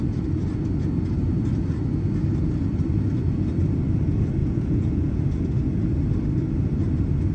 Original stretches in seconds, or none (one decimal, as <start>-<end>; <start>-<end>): 0.0-4.4; 5.2-7.3